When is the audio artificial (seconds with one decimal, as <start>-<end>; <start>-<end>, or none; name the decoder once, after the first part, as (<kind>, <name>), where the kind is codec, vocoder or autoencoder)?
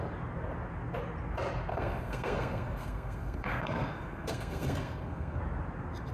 1.7-5.4 (codec, SNAC)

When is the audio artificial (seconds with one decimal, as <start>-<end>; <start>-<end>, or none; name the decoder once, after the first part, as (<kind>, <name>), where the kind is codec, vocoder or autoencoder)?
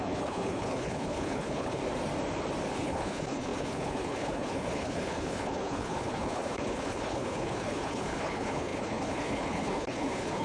0.0-1.8 (codec, HILCodec); 2.7-10.4